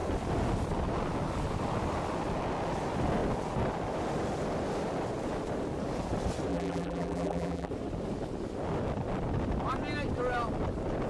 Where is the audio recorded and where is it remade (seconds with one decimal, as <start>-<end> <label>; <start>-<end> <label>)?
0.0-6.5 recorded; 6.5-7.7 remade; 7.7-11.1 recorded